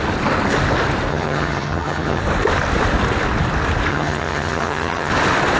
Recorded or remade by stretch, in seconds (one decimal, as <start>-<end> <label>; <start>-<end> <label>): 0.0-1.1 recorded; 1.1-2.2 remade; 2.2-3.9 recorded; 3.9-5.1 remade; 5.1-5.6 recorded